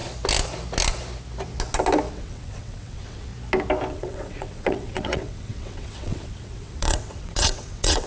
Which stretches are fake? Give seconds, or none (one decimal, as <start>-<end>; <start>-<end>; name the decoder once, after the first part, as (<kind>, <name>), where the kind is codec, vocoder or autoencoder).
2.1-3.3 (vocoder, WaveNeXt); 3.9-8.1